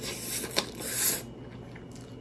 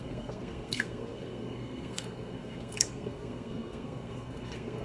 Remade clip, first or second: second